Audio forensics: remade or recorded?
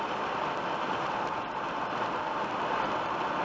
recorded